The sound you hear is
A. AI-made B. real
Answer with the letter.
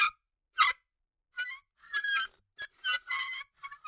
B